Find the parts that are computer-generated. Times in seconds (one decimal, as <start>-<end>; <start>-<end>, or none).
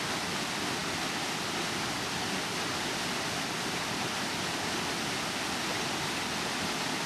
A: none